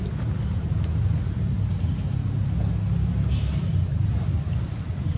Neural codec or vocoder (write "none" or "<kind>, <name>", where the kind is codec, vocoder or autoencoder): none